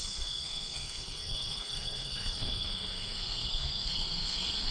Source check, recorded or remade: remade